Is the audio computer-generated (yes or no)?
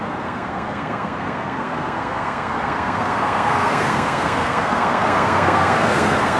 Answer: yes